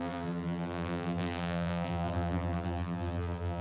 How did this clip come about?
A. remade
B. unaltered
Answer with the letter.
A